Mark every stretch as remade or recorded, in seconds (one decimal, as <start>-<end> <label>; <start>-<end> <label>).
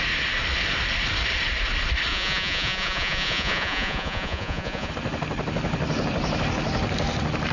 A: 0.0-2.1 recorded; 2.1-4.9 remade; 4.9-7.5 recorded